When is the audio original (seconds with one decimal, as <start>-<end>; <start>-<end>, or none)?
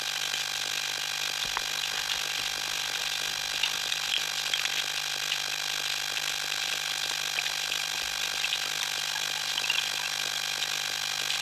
0.0-11.4